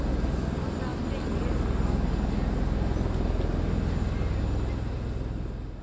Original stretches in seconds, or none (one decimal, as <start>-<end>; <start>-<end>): 0.0-5.8